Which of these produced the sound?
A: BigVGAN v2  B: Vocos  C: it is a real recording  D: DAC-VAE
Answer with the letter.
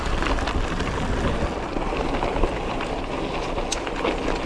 C